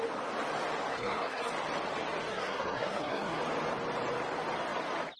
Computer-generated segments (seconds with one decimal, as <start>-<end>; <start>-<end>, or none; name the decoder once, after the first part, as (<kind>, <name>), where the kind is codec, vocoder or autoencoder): 0.9-1.5 (codec, SNAC); 2.3-3.4